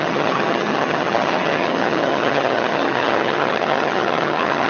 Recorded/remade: remade